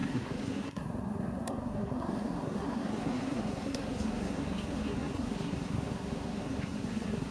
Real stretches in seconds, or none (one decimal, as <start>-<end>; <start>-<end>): none